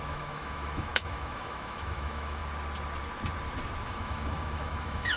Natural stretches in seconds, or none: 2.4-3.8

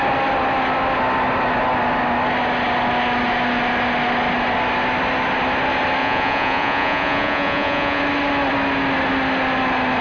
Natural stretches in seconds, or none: 0.0-6.0; 8.0-10.0

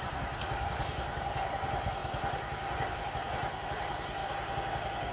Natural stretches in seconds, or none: 2.0-2.9; 4.2-5.1

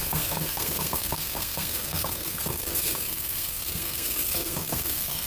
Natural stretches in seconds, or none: none

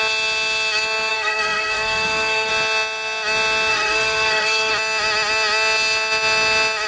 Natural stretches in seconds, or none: 0.0-1.1; 2.5-3.7; 4.7-6.9

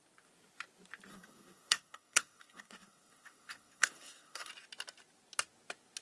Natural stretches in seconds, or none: 0.0-1.1; 4.5-6.0

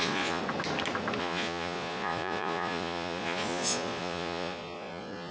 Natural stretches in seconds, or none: 0.4-1.2

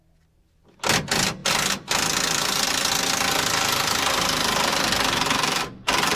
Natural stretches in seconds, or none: 0.0-6.2